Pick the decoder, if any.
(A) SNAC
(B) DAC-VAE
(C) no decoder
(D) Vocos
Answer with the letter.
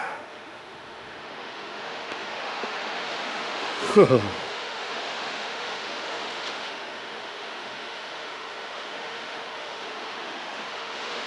B